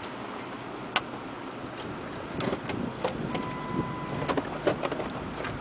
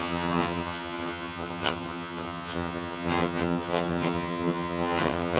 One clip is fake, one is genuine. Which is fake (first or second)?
second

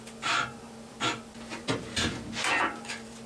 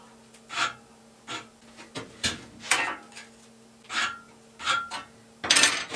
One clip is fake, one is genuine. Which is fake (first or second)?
first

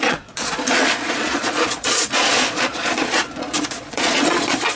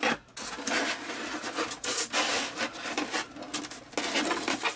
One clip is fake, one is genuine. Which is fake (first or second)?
first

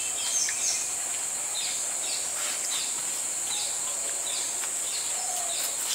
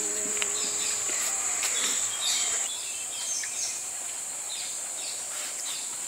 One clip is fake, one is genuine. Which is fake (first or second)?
second